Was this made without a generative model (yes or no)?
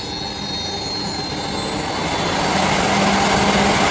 yes